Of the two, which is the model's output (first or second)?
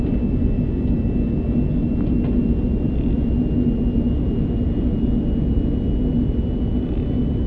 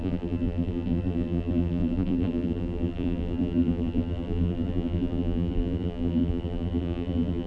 second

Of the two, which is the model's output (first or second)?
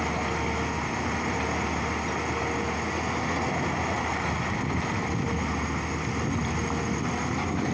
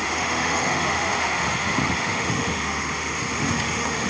second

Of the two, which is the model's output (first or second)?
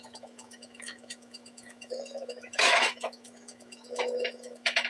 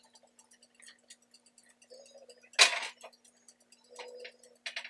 first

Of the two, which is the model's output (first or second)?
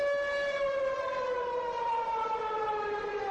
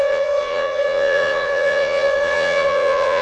second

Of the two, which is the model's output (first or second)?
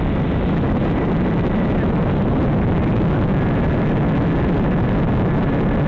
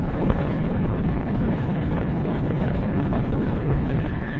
second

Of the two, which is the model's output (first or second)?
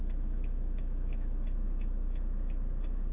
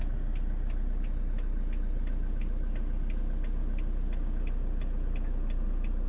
first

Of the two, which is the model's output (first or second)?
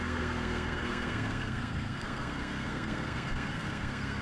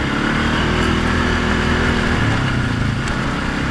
first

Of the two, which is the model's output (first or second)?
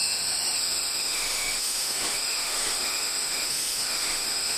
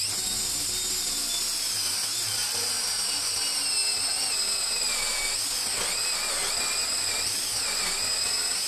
first